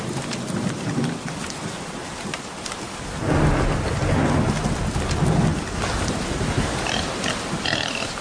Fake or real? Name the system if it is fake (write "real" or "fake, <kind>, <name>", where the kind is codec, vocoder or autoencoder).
real